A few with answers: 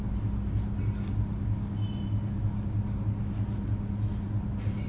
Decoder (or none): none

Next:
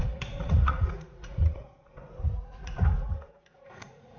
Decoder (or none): vocoder, Vocos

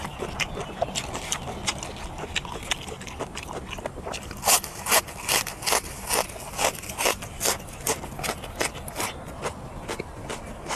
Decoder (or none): none